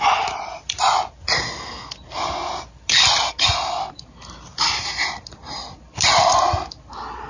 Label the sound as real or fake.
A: real